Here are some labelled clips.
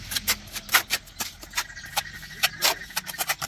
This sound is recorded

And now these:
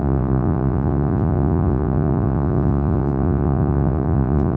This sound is remade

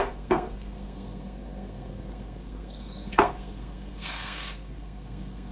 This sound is remade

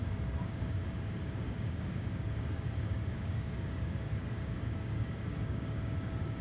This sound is remade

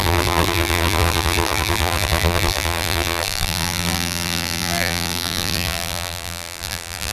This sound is remade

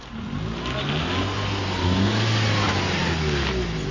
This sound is recorded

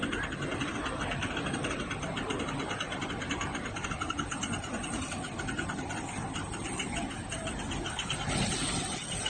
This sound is recorded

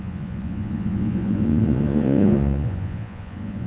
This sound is remade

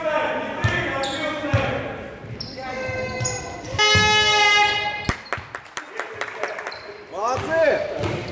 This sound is recorded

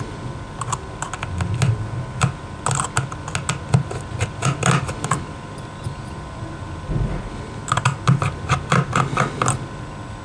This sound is recorded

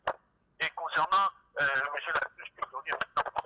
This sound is recorded